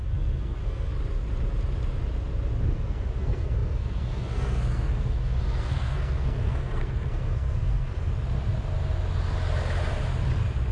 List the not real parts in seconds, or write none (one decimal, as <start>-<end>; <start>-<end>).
0.0-0.9; 2.6-8.1